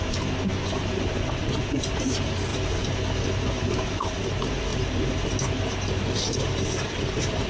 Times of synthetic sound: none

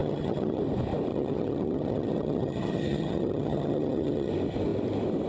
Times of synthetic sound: 0.0-0.6 (vocoder, HiFi-GAN); 1.1-4.3

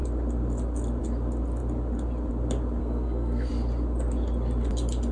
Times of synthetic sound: 2.8-3.5 (codec, SNAC)

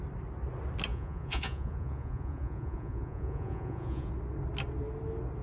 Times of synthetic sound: 0.9-4.1 (vocoder, Vocos)

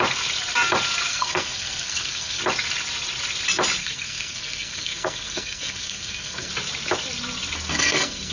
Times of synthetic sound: 1.1-2.4 (codec, SNAC); 3.8-6.5; 7.7-8.3

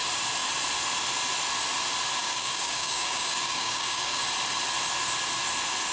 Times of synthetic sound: 2.2-4.2 (codec, DAC)

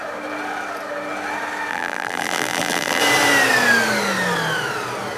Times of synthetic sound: 1.7-3.0 (vocoder, BigVGAN v2)